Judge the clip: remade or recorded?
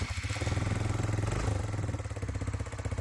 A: recorded